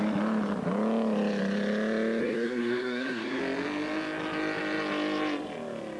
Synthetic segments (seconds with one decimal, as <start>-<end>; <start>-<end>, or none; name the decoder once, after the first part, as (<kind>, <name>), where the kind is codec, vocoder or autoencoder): 2.2-3.4 (codec, SNAC)